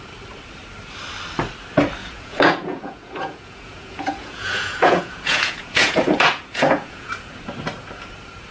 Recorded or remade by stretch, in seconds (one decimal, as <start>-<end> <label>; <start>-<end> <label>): 0.0-2.0 recorded; 2.0-7.1 remade; 7.1-8.5 recorded